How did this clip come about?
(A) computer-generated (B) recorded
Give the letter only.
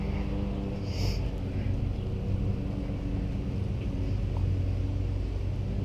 B